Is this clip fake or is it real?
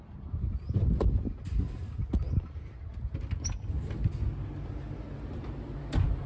real